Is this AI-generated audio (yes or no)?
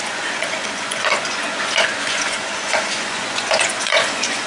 yes